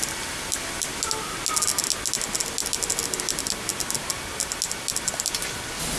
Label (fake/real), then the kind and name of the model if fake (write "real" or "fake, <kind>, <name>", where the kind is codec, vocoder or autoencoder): real